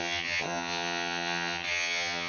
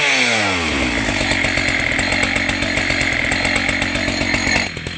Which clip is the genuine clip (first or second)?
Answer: second